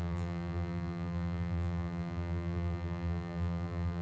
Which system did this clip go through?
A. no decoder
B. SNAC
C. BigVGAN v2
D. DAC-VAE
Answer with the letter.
C